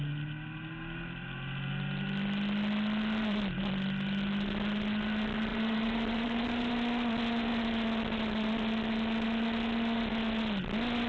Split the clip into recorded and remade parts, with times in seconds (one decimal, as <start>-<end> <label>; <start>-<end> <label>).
0.0-5.5 recorded; 5.5-6.7 remade; 6.7-11.1 recorded